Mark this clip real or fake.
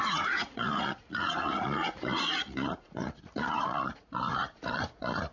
fake